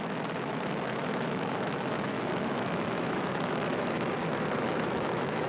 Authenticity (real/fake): fake